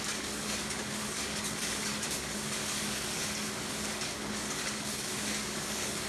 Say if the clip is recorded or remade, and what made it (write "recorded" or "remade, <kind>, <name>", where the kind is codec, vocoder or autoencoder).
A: remade, codec, DAC